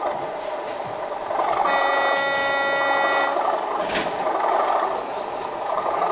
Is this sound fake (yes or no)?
no